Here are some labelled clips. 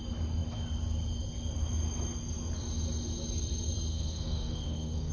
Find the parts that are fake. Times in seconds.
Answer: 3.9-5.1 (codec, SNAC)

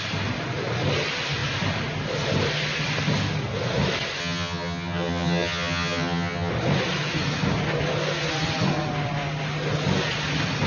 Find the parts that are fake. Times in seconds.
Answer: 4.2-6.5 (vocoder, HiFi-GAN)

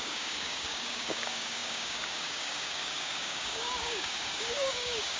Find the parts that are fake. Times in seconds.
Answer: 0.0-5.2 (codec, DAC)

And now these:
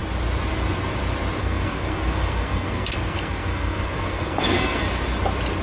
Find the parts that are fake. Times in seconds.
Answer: 1.4-4.8 (codec, SNAC)